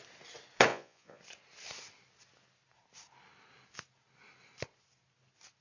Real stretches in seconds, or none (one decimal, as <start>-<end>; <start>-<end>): 0.0-0.7; 1.2-5.6